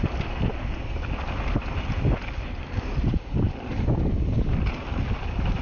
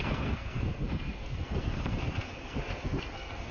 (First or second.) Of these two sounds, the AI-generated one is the second